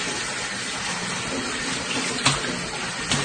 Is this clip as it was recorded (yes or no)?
yes